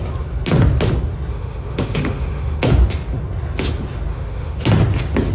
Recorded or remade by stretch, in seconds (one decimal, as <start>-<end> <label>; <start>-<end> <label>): 0.0-1.3 recorded; 1.3-2.6 remade; 2.6-4.1 recorded; 4.1-4.6 remade; 4.6-5.3 recorded